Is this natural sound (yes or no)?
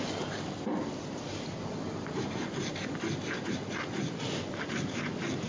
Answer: yes